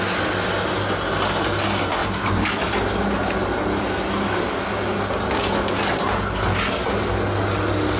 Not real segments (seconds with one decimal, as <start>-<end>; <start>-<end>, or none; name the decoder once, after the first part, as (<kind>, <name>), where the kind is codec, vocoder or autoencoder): none